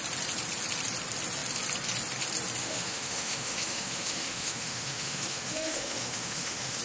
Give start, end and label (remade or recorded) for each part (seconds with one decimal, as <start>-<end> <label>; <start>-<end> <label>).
0.0-2.6 recorded; 2.6-6.8 remade